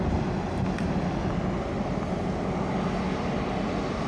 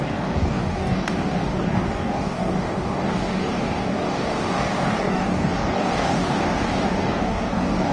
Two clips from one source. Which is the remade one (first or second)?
second